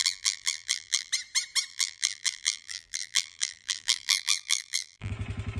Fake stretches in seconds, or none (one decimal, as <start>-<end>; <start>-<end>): 0.0-1.1; 1.7-5.1

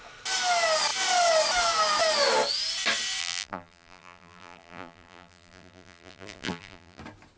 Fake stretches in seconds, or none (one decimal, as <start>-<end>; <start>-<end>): 3.2-7.0

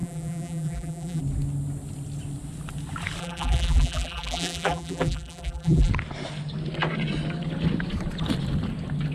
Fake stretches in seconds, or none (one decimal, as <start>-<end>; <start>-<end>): 0.0-1.2; 3.2-5.9

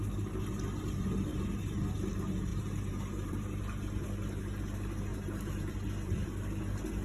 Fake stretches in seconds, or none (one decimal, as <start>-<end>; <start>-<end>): 1.3-1.9; 2.5-3.6; 5.1-6.6